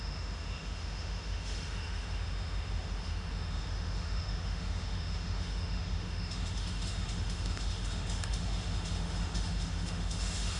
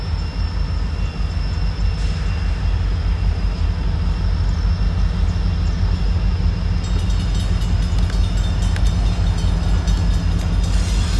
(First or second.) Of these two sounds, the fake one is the first